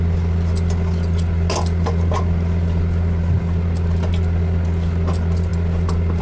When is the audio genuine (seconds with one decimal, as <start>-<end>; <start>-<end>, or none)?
0.0-6.2